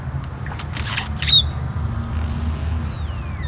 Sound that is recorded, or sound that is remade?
recorded